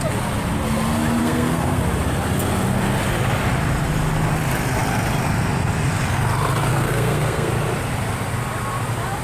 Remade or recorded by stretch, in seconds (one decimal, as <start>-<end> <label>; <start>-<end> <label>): 0.0-1.2 recorded; 1.2-1.8 remade; 1.8-6.7 recorded; 6.7-7.5 remade; 7.5-9.2 recorded